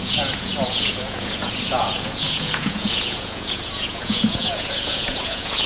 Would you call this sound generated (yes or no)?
yes